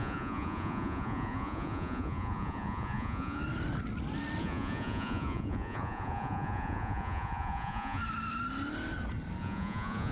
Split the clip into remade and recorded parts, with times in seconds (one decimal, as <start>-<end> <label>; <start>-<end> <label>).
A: 0.0-3.4 remade; 3.4-4.4 recorded; 4.4-8.0 remade; 8.0-9.4 recorded; 9.4-10.1 remade